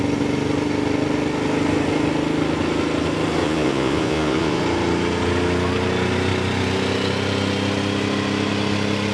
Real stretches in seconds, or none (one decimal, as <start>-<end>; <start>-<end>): 0.0-3.4; 4.6-9.1